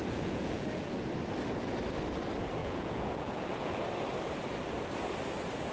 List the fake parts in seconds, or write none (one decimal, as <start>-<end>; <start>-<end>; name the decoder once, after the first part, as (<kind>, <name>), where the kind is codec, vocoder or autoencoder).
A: 0.0-1.0 (vocoder, Vocos); 2.6-3.8